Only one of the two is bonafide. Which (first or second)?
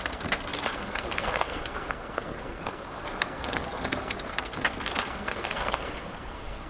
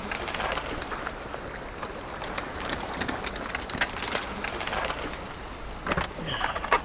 second